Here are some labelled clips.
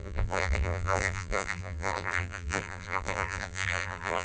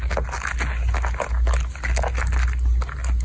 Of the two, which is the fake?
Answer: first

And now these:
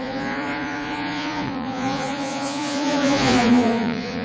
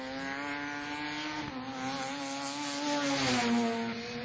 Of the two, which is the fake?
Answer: first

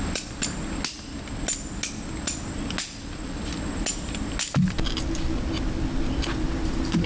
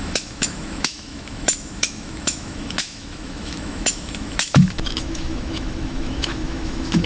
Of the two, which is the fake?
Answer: second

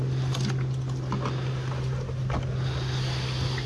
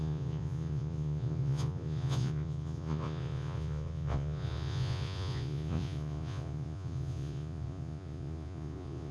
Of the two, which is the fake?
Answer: second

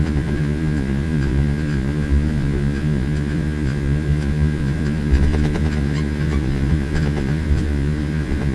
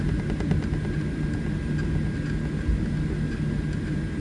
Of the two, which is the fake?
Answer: first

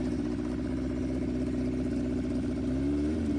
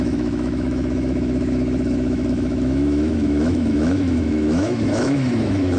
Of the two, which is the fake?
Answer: second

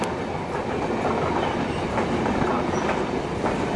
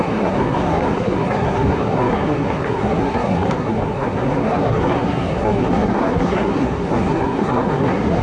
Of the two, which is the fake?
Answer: second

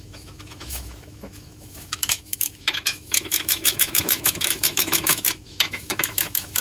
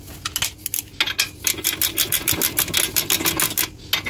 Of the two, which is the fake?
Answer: first